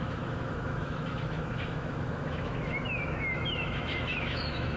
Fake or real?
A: fake